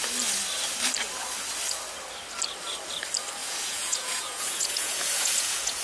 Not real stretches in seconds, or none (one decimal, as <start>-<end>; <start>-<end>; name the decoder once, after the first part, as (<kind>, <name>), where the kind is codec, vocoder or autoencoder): 3.4-5.8 (vocoder, Vocos)